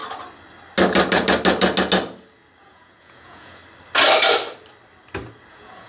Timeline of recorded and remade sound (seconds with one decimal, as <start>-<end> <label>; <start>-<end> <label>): 0.0-2.6 recorded; 2.6-3.6 remade; 3.6-5.5 recorded; 5.5-5.9 remade